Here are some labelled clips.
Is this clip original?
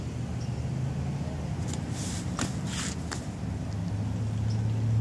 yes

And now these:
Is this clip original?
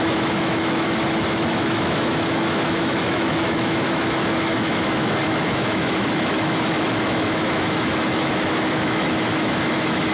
no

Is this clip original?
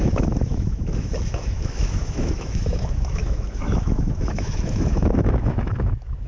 no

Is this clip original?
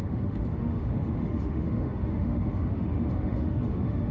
no